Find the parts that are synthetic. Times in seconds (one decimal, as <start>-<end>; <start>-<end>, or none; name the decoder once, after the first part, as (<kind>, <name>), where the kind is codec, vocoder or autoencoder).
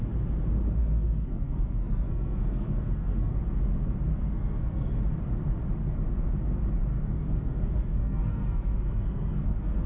0.8-3.3 (codec, SNAC); 4.1-4.9; 6.9-9.9